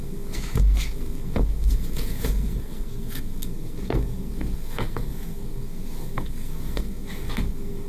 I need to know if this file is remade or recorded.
remade